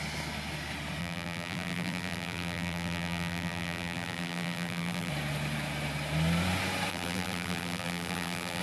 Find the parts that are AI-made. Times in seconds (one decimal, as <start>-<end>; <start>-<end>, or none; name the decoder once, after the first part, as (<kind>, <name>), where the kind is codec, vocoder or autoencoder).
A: 1.0-5.1 (vocoder, BigVGAN v2); 6.9-8.6